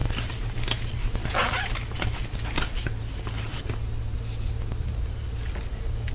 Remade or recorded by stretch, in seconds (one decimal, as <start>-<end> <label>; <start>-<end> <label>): 0.0-6.1 recorded